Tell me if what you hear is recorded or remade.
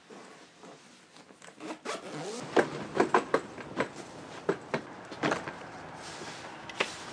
recorded